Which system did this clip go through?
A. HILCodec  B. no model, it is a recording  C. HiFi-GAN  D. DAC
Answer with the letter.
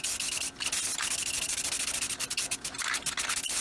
B